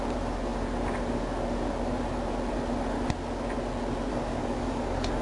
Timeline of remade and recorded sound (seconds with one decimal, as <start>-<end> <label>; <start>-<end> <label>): 0.0-4.1 recorded; 4.1-5.2 remade